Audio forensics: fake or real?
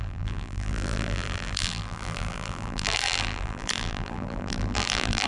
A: fake